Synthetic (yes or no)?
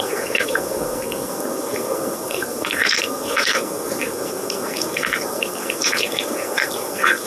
yes